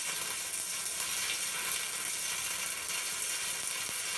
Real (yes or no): yes